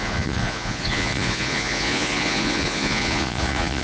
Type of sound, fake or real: fake